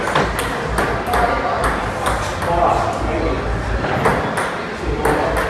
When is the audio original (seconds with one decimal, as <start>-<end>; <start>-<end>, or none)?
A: 0.0-5.5